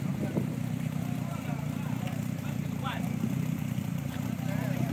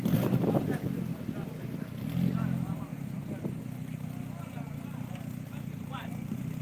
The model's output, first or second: first